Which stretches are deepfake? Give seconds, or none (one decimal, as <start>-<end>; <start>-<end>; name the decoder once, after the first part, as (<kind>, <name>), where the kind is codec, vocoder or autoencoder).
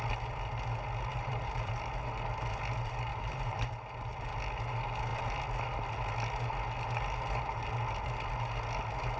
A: 1.1-1.7 (vocoder, BigVGAN v2); 3.1-3.7